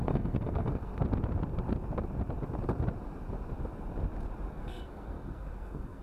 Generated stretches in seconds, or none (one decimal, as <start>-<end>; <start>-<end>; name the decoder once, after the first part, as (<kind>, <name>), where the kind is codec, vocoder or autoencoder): 0.0-0.9 (codec, SNAC); 4.5-6.0

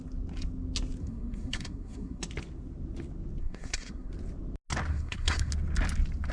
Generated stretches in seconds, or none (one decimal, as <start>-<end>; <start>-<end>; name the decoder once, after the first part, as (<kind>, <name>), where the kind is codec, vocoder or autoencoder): 1.0-2.2 (codec, SNAC); 3.4-4.1; 4.9-5.5

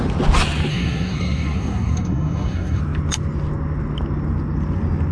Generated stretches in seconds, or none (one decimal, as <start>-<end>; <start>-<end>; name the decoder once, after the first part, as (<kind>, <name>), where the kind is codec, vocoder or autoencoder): 0.7-2.8 (codec, SNAC)

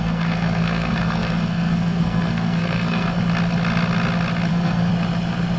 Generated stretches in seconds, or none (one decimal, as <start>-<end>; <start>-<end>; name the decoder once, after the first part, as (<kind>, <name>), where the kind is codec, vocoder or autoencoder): 0.0-3.2 (codec, SNAC); 4.5-4.9

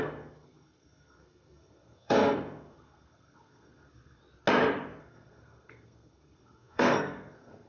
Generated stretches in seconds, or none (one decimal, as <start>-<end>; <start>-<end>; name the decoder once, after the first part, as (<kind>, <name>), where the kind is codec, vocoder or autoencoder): 0.0-4.2 (codec, SNAC); 5.0-7.7